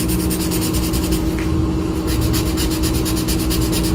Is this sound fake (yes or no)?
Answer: no